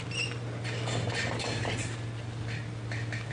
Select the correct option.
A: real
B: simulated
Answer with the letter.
A